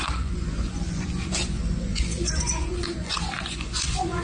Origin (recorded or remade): remade